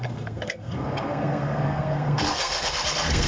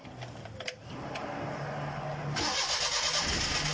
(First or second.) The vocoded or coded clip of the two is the first